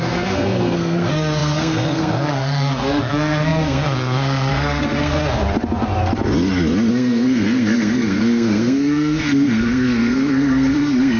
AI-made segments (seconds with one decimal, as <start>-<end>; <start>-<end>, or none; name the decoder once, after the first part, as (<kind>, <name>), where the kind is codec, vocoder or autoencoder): 0.0-5.2 (codec, SNAC); 6.9-11.2